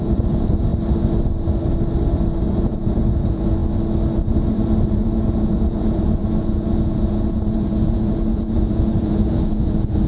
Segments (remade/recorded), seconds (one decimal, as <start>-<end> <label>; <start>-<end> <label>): 0.0-0.7 remade; 0.7-2.5 recorded; 2.5-3.6 remade; 3.6-4.2 recorded; 4.2-10.1 remade